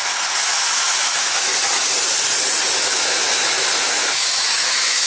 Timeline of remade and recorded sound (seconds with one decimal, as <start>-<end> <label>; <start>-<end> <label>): 0.0-1.5 remade; 1.5-2.7 recorded; 2.7-5.1 remade